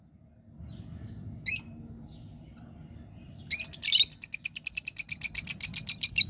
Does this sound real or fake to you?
real